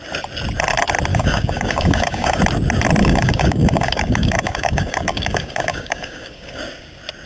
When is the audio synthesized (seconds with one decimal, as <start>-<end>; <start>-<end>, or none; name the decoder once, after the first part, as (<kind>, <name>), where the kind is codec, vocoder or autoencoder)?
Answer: 1.1-2.4 (codec, DAC); 3.0-6.6